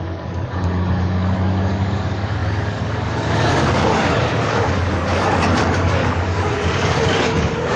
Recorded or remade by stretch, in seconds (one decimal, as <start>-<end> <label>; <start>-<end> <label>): 0.0-7.8 remade